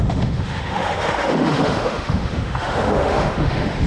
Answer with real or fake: fake